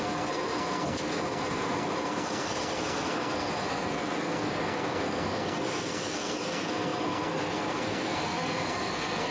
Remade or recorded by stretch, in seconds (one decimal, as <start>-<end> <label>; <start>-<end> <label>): 0.0-9.3 remade